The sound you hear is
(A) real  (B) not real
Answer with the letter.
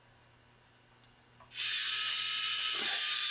A